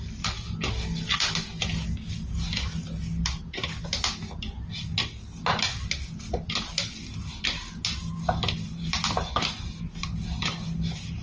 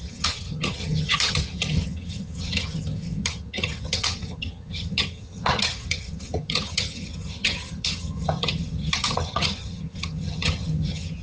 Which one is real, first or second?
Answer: first